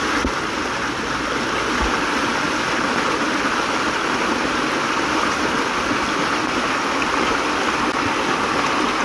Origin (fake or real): real